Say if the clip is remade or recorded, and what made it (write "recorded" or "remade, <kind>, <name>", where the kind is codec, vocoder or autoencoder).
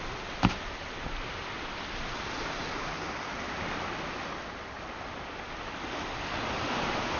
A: recorded